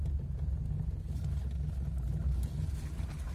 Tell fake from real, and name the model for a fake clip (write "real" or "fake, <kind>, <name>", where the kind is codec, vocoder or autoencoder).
real